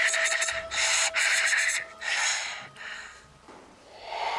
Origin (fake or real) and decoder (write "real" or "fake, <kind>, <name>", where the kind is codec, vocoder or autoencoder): real